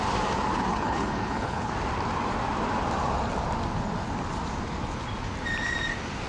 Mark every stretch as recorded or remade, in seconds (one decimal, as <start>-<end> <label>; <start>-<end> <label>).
0.0-0.7 recorded; 0.7-1.7 remade; 1.7-6.3 recorded